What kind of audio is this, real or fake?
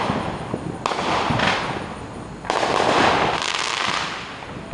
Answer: real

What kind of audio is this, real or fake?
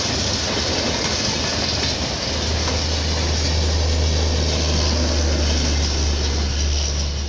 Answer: real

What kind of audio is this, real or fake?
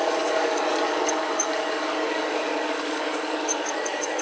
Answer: fake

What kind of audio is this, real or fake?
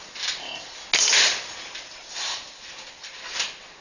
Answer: real